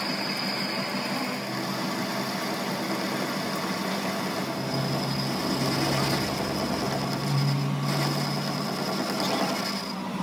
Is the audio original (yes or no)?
yes